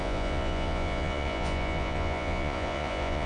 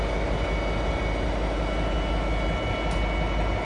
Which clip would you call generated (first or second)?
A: first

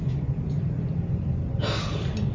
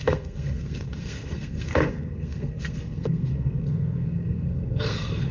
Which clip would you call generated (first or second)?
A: second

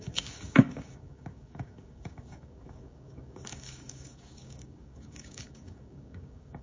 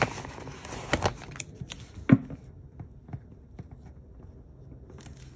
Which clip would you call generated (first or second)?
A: first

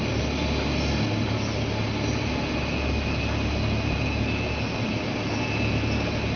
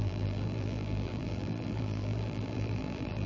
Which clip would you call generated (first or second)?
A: second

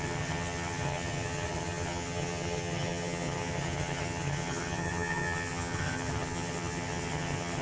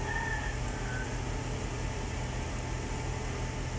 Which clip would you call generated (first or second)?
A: first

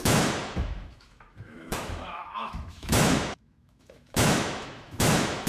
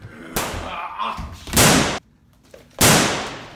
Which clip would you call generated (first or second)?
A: first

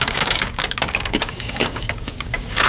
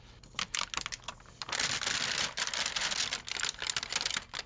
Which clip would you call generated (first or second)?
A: first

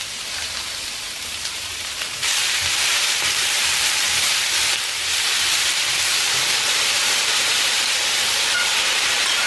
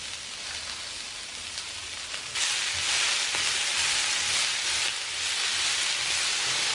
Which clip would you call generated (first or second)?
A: first